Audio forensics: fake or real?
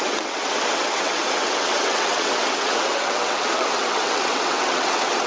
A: fake